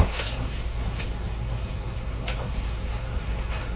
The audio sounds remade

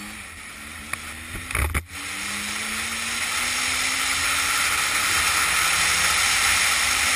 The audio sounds recorded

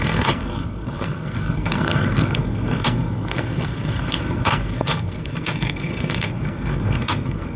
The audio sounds remade